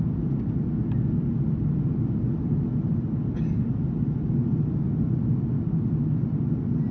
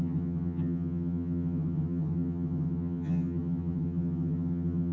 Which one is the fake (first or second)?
second